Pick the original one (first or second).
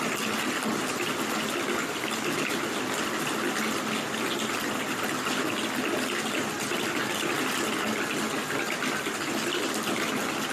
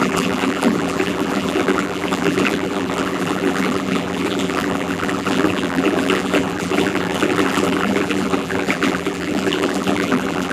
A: first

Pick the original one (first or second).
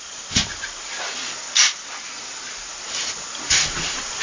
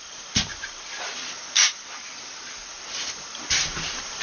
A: first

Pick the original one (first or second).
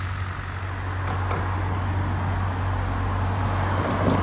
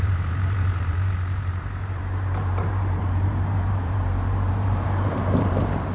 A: first